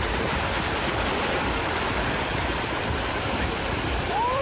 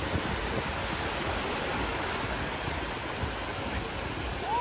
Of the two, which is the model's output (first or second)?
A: first